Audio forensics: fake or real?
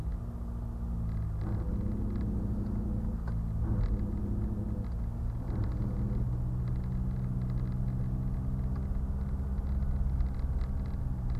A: real